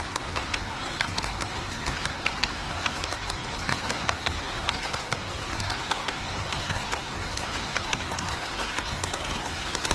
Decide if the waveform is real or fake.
fake